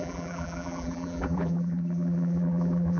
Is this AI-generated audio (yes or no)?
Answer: yes